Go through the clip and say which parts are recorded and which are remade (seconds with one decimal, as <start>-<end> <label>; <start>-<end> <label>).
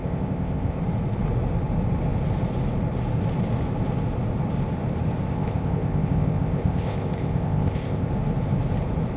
0.0-0.8 remade; 0.8-5.3 recorded; 5.3-8.1 remade; 8.1-9.2 recorded